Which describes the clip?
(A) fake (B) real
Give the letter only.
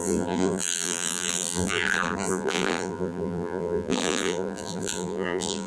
A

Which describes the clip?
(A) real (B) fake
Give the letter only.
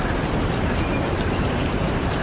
B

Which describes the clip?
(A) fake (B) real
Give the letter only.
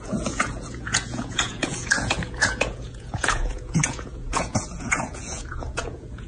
A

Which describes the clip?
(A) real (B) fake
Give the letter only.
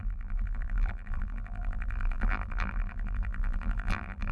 B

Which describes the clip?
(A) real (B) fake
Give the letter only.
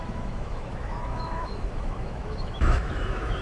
B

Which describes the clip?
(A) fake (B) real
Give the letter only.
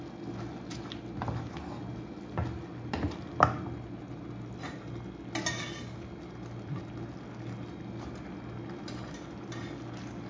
B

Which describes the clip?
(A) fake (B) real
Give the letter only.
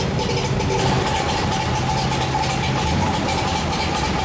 B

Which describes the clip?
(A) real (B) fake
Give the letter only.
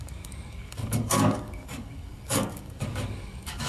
B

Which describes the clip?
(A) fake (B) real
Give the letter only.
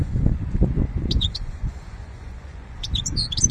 A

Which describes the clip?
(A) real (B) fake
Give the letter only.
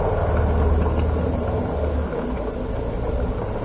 A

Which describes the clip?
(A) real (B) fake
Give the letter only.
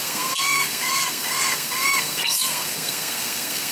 B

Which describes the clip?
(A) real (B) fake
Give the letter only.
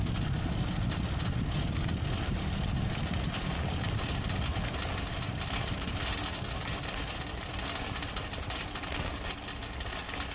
A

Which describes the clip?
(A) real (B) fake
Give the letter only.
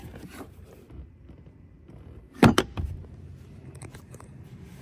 B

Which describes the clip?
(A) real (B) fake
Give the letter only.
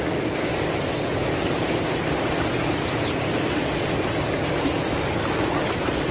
A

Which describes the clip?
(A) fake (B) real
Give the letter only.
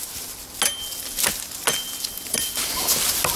B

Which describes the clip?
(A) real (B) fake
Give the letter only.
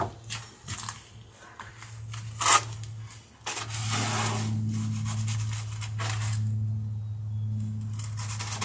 A